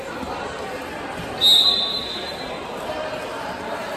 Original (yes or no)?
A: yes